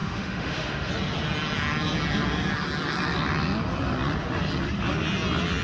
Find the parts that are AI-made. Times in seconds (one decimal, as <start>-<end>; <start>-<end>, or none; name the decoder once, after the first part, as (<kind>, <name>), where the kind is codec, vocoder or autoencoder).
0.0-0.9 (autoencoder, DAC-VAE)